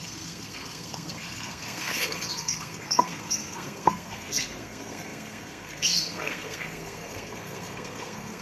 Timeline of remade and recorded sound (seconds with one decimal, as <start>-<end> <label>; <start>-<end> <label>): 0.0-8.4 remade